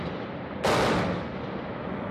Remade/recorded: recorded